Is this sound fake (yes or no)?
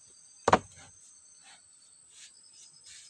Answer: no